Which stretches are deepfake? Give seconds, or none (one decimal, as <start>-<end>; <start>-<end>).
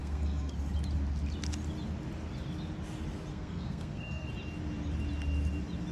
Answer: 0.0-0.5; 3.3-4.3